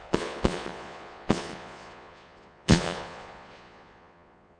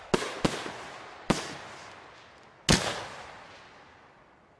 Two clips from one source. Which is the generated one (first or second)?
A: first